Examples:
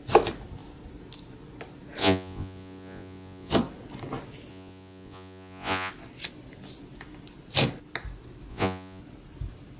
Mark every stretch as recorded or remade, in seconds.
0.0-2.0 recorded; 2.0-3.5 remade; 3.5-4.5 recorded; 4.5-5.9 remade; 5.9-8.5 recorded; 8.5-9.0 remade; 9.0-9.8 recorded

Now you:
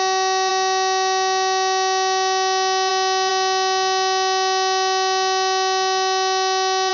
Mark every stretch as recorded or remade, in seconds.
0.0-6.9 recorded

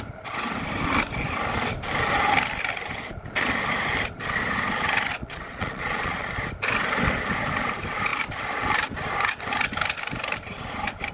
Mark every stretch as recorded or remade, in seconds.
0.0-5.1 recorded; 5.1-6.3 remade; 6.3-11.1 recorded